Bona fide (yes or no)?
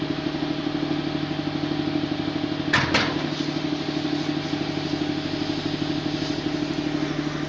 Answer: yes